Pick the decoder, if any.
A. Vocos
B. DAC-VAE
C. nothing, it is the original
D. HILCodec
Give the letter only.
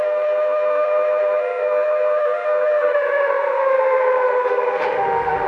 B